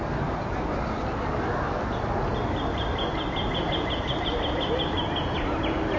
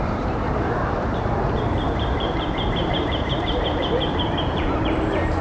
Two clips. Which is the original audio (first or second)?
first